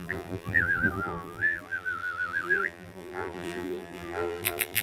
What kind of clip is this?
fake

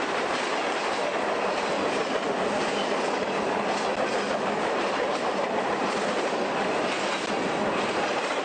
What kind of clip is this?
real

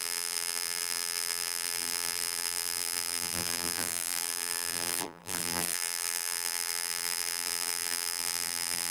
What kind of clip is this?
fake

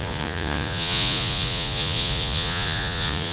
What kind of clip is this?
fake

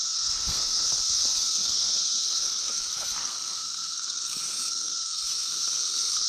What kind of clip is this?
fake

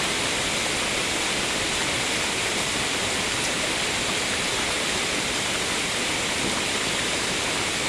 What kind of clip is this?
real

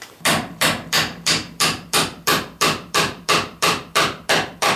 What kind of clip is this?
fake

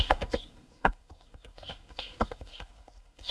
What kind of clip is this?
fake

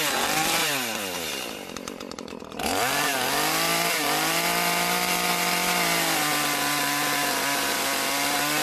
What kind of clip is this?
fake